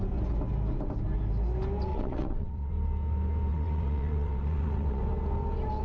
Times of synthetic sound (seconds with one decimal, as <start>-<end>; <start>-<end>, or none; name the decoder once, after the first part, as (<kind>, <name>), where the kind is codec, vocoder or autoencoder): 1.9-2.7 (vocoder, WaveNeXt); 3.5-5.0